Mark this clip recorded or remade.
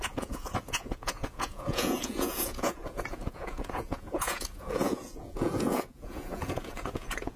remade